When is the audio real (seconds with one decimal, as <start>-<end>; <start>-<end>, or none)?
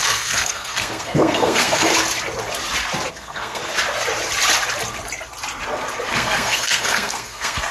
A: 1.9-3.1; 3.6-6.1